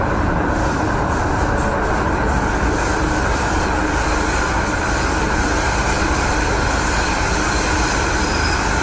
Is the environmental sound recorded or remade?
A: recorded